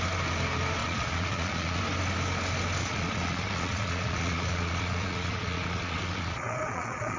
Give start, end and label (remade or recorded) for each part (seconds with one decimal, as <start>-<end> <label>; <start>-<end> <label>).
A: 0.0-0.8 recorded; 0.8-1.8 remade; 1.8-2.8 recorded; 2.8-7.2 remade